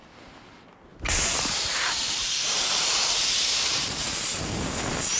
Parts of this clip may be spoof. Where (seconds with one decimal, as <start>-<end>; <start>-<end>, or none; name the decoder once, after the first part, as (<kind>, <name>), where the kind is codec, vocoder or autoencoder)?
0.9-4.0 (vocoder, BigVGAN v2)

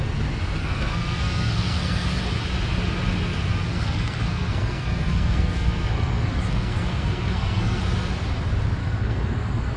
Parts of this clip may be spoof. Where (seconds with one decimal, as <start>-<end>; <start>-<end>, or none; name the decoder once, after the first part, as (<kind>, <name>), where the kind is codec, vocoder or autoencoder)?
0.6-2.2 (codec, SNAC); 3.7-7.8; 8.8-9.8